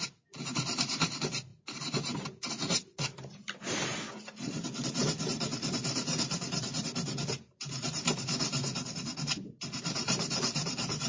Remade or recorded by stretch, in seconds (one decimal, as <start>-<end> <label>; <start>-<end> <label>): 0.0-11.1 remade